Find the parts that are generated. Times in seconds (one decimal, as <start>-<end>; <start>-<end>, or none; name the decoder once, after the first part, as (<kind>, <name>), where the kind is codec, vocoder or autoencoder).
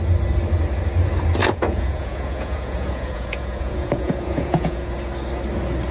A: 1.4-4.9 (vocoder, Vocos)